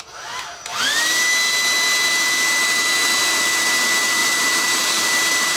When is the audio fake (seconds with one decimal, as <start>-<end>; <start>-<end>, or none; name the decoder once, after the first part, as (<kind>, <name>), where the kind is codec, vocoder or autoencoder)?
4.2-5.6 (vocoder, BigVGAN v2)

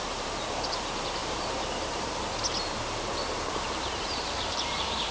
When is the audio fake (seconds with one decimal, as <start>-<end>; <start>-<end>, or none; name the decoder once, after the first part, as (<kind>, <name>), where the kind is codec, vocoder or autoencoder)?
0.0-5.1 (vocoder, BigVGAN v2)

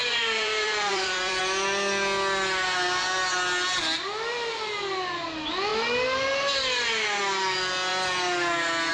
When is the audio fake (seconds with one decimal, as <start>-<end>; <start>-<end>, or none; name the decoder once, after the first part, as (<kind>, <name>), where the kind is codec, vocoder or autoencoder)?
0.0-1.4 (vocoder, BigVGAN v2)